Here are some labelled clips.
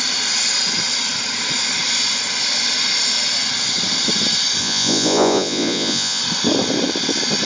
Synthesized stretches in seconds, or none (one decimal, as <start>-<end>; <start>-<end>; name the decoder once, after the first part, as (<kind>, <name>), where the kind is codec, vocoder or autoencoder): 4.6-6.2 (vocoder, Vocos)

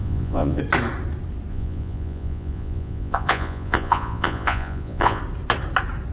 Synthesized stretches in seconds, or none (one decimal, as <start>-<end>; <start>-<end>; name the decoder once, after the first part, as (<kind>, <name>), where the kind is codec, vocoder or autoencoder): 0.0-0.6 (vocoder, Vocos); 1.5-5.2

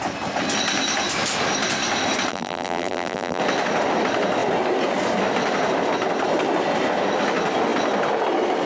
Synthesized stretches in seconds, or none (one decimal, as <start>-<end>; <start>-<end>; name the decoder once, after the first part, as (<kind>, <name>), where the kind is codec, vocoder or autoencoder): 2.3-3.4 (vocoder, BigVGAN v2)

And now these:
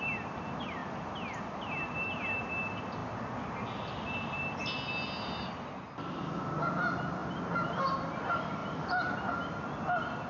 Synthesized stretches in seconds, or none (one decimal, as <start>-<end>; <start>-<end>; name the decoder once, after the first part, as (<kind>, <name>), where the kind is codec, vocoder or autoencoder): none

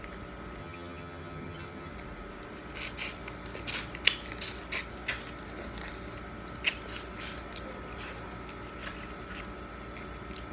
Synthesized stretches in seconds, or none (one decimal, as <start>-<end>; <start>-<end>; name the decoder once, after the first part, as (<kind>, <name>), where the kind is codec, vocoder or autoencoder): 0.6-1.9 (vocoder, HiFi-GAN)

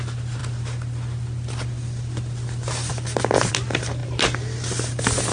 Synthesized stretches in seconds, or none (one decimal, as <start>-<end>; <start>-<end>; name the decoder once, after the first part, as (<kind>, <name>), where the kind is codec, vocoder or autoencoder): none

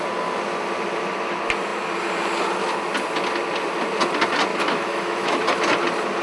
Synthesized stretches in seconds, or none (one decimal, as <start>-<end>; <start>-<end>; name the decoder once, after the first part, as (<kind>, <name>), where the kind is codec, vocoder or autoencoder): 4.5-5.4 (autoencoder, DAC-VAE)